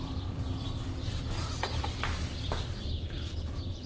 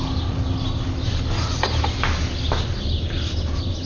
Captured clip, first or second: second